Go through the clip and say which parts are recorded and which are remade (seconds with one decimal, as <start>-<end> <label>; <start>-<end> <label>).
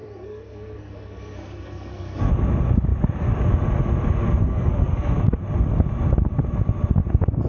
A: 0.0-2.3 remade; 2.3-4.4 recorded; 4.4-5.2 remade; 5.2-7.5 recorded